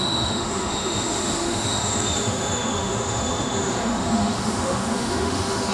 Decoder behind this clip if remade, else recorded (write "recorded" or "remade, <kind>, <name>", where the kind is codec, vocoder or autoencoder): remade, autoencoder, DAC-VAE